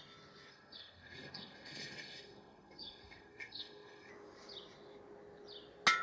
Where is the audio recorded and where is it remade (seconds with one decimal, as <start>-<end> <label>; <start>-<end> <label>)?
0.0-0.5 recorded; 0.5-4.1 remade; 4.1-6.0 recorded

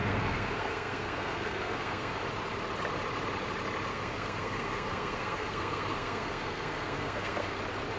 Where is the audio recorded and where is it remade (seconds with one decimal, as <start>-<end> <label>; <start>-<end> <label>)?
0.0-2.2 remade; 2.2-3.9 recorded; 3.9-7.6 remade; 7.6-8.0 recorded